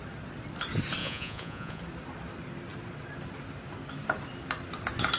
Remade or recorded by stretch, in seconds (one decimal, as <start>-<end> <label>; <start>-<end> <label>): 0.0-1.0 recorded; 1.0-1.8 remade; 1.8-5.2 recorded

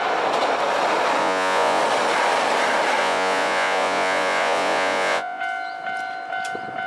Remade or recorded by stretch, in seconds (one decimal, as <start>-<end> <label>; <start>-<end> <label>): 0.0-1.2 recorded; 1.2-1.8 remade; 1.8-3.0 recorded; 3.0-5.4 remade; 5.4-6.9 recorded